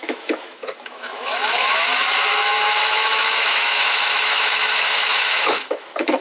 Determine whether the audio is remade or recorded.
remade